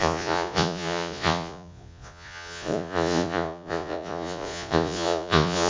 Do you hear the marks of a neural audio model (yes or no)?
yes